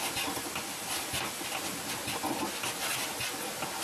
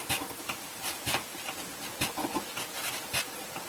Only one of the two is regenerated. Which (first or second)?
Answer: second